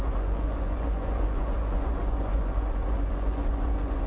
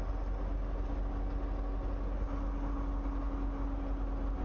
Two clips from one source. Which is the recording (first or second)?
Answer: second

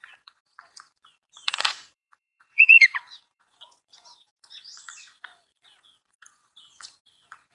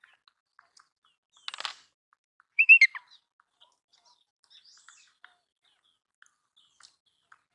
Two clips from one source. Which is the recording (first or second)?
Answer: second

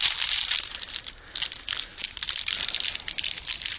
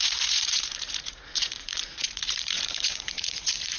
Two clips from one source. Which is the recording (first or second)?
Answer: first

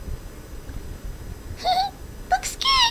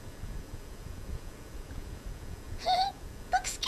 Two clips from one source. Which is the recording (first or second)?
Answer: first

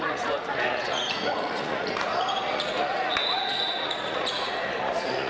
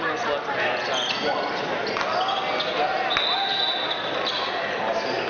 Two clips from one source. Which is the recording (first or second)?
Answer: second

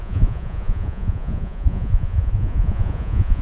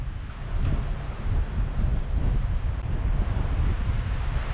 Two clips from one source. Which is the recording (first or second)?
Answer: second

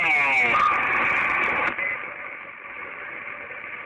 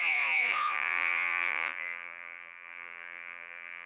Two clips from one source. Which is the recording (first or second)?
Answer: first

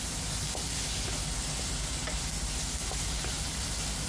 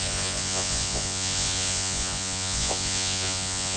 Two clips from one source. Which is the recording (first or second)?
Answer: first